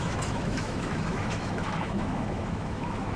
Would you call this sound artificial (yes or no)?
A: yes